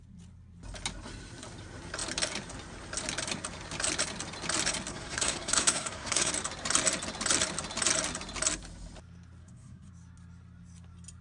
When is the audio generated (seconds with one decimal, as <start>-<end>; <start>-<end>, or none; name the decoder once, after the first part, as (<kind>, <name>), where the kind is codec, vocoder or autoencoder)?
4.9-6.3 (codec, SNAC); 9.4-9.9